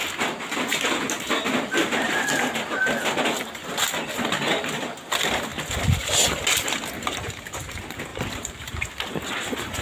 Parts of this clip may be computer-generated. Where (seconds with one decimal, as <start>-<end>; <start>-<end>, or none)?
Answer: 5.5-6.3; 8.1-8.9